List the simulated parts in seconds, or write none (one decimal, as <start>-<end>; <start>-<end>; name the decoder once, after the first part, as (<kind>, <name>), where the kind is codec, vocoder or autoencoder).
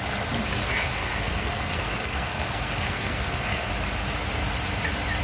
0.6-3.7 (codec, SNAC)